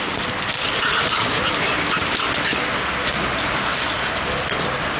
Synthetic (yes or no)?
no